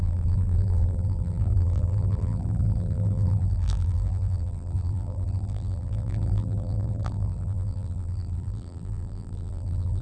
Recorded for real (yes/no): no